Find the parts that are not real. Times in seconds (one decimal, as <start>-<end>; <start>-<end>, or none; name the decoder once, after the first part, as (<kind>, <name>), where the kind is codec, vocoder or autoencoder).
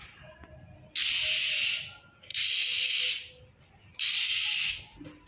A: 2.3-4.7 (vocoder, BigVGAN v2)